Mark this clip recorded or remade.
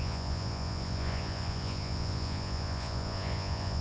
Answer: remade